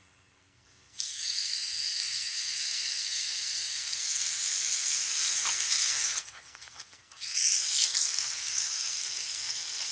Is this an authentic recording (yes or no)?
no